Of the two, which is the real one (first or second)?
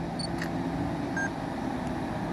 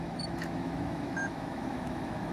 first